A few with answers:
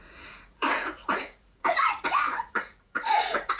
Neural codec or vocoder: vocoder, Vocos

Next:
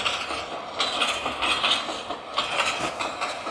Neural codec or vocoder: none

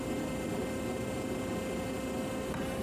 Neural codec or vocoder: none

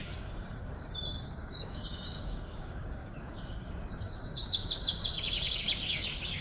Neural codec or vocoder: codec, DAC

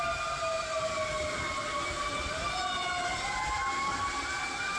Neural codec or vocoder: none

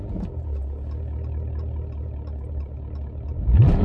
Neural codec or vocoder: none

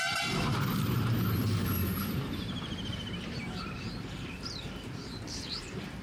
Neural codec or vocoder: vocoder, BigVGAN v2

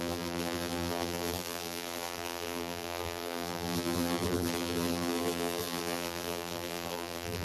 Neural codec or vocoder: vocoder, BigVGAN v2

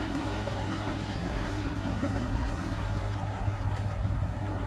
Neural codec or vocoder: codec, SNAC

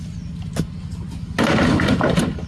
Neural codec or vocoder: none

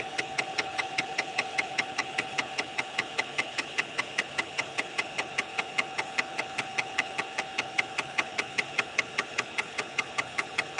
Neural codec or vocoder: codec, HILCodec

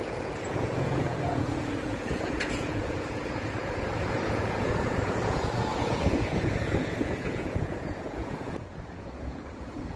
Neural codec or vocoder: vocoder, Vocos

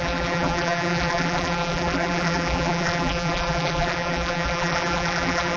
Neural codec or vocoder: vocoder, BigVGAN v2